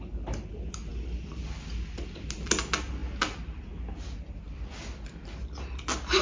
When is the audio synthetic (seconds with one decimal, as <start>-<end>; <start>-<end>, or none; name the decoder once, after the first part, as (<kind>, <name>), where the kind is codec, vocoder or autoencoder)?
none